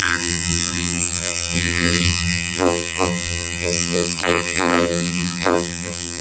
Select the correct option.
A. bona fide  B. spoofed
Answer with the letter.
B